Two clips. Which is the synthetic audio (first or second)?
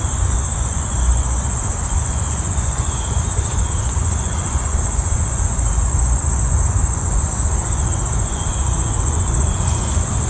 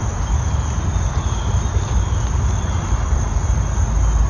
first